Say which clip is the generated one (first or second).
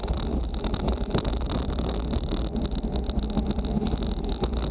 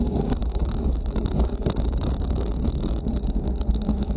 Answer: second